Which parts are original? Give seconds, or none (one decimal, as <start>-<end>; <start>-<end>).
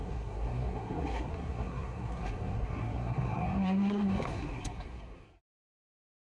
none